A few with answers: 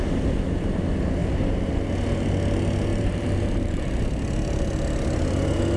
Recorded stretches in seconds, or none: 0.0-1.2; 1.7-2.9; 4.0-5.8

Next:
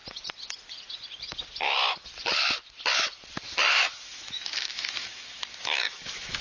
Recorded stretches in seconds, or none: 0.0-3.8

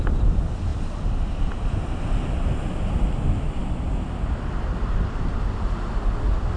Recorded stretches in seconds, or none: 0.0-6.6

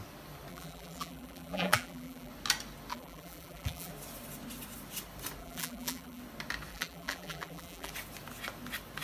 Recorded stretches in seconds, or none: 0.0-0.5; 2.3-2.9; 3.9-5.4; 6.2-6.7; 7.9-9.0